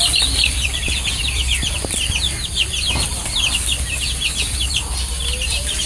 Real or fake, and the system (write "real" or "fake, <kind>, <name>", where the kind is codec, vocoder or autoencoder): fake, vocoder, BigVGAN v2